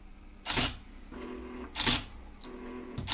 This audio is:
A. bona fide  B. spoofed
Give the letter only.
A